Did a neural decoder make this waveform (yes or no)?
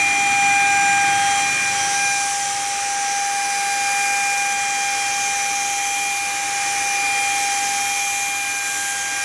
no